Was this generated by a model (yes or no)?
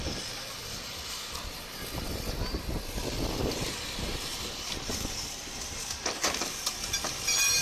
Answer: no